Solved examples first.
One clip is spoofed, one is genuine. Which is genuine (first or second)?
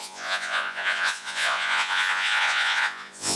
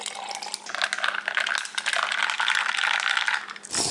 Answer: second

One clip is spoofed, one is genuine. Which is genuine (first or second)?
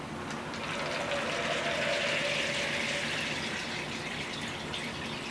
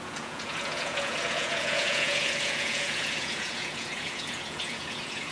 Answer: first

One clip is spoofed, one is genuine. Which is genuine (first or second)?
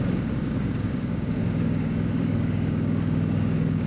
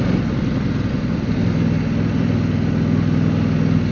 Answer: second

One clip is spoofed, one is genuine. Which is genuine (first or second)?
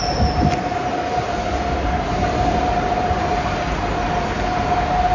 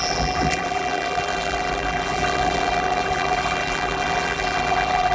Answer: first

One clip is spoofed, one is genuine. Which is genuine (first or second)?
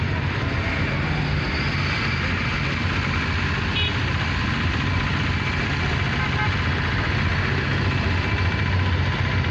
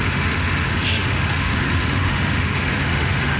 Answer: first